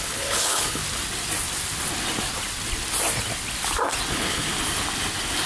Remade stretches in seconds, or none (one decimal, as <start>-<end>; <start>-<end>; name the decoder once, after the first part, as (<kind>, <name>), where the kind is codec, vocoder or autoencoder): 0.0-0.8 (codec, HILCodec); 4.1-4.5